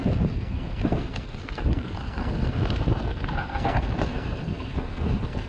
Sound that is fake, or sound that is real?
fake